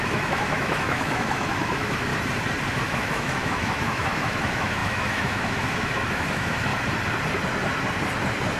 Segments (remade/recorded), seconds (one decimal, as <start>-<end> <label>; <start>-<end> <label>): 0.0-2.1 remade; 2.1-2.7 recorded; 2.7-6.7 remade; 6.7-8.6 recorded